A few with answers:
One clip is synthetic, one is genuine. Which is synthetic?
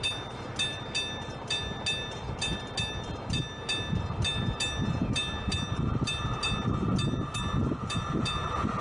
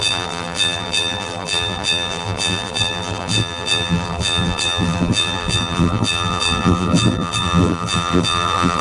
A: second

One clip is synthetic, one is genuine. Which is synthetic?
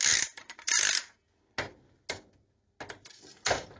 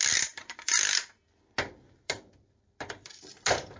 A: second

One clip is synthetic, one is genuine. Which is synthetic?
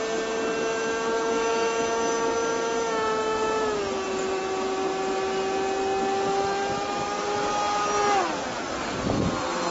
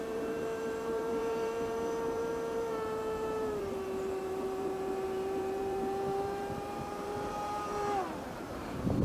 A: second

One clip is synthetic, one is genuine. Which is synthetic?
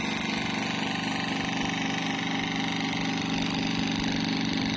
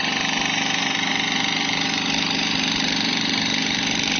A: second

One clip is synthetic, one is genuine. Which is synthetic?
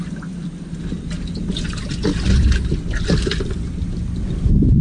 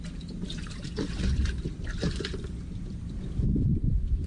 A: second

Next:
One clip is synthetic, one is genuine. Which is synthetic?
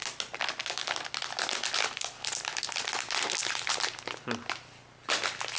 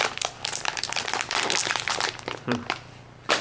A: second